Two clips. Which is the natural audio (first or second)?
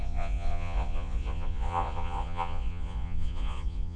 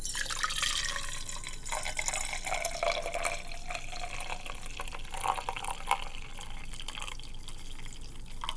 second